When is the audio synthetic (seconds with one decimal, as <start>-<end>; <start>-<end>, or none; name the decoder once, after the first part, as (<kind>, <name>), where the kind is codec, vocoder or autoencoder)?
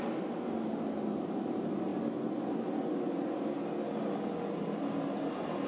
none